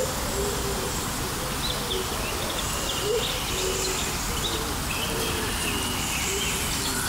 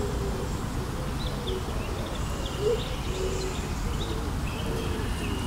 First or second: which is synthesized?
first